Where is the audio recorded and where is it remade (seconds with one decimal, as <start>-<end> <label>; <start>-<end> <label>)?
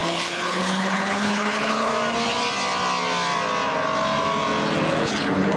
0.0-1.9 remade; 1.9-5.0 recorded; 5.0-5.6 remade